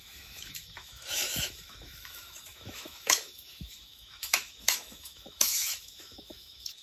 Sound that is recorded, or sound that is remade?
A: remade